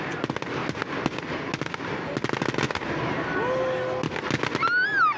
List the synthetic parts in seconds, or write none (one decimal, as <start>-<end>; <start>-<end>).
none